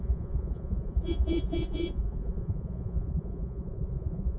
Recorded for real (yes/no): no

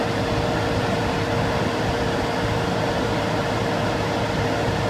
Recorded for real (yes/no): yes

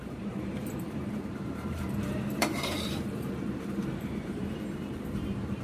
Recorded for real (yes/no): no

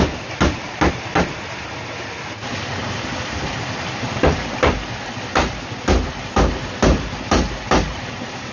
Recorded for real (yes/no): yes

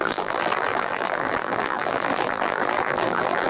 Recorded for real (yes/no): no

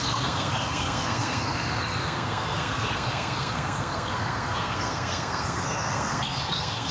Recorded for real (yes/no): no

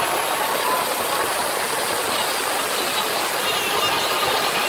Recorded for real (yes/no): yes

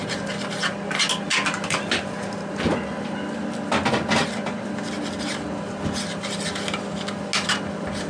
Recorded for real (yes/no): yes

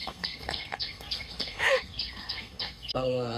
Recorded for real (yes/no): no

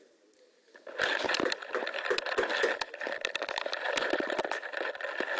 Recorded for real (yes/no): yes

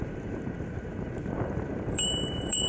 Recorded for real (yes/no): no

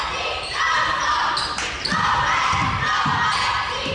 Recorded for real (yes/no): yes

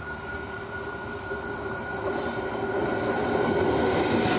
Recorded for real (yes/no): yes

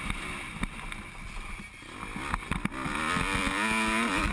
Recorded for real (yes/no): yes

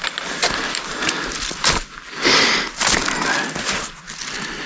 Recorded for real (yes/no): yes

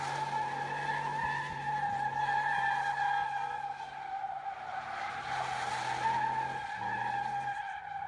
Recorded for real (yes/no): yes